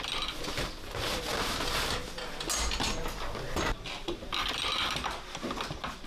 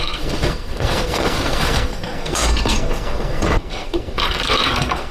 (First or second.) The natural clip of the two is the first